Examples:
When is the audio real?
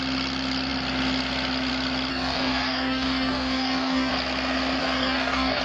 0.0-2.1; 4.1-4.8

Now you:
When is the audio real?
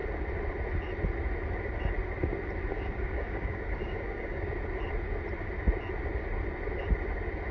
0.0-2.7; 4.6-7.5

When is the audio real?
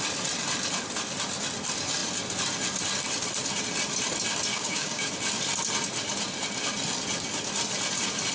0.0-4.5; 5.1-8.3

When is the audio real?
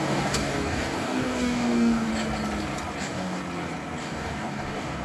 2.1-3.0; 3.4-4.0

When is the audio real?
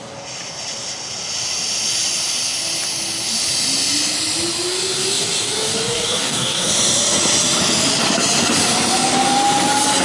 0.0-4.7; 6.7-10.0